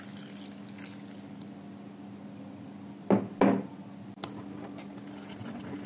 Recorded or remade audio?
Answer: recorded